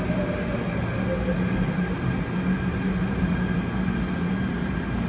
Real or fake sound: real